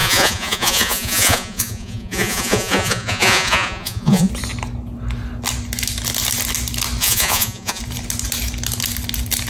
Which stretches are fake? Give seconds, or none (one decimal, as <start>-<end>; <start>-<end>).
0.0-4.3; 7.0-7.8

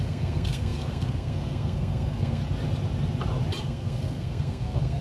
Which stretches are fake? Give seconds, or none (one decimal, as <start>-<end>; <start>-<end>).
0.0-2.4; 3.6-5.0

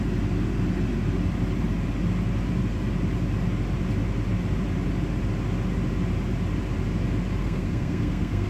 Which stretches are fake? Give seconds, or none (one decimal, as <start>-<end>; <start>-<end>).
7.4-8.5